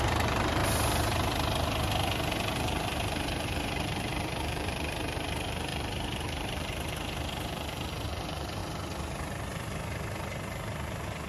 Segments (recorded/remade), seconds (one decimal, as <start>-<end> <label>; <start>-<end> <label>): 0.0-0.6 remade; 0.6-2.3 recorded; 2.3-8.6 remade; 8.6-11.3 recorded